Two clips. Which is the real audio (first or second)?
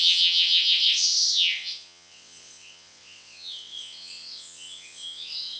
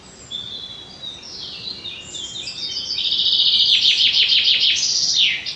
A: second